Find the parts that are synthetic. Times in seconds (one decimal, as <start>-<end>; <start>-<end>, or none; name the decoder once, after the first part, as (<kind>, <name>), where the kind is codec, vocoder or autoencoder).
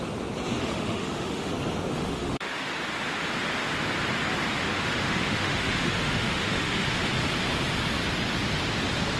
0.6-1.5 (autoencoder, DAC-VAE); 1.9-2.8; 4.7-7.0